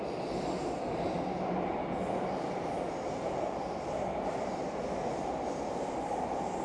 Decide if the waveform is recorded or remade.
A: recorded